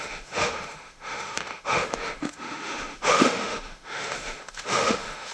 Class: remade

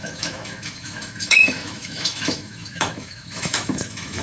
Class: remade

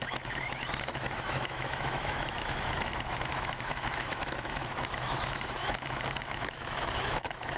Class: remade